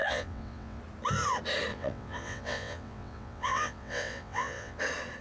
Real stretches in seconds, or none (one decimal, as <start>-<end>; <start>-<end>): 0.8-1.7; 4.8-5.2